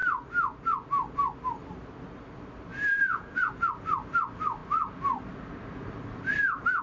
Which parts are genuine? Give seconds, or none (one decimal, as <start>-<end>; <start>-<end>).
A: 0.0-2.7; 3.5-6.8